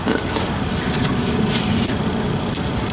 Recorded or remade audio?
remade